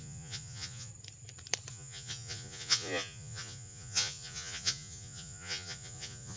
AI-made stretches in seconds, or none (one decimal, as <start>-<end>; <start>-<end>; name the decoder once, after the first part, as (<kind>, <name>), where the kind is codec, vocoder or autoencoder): 0.0-0.9 (vocoder, Vocos); 1.7-6.4